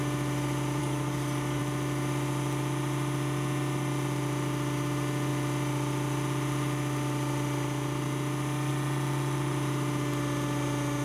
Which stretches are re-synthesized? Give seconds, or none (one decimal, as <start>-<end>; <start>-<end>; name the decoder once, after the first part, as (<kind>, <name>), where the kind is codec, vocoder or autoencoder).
0.8-1.6 (codec, DAC)